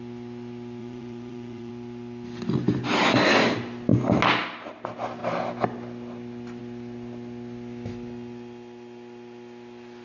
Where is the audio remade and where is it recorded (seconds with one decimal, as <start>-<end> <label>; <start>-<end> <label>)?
0.0-0.8 recorded; 0.8-1.7 remade; 1.7-10.0 recorded